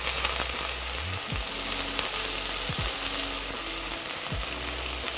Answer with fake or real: real